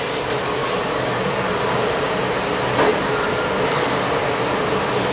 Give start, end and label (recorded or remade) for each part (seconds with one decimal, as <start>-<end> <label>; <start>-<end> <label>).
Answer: 0.0-0.6 recorded; 0.6-2.5 remade; 2.5-5.1 recorded